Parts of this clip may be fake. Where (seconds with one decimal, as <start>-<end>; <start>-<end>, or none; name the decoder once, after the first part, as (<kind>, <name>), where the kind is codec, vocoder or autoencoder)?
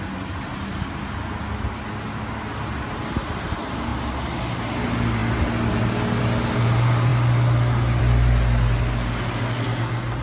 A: none